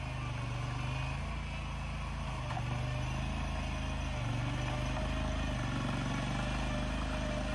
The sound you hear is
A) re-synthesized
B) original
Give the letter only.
B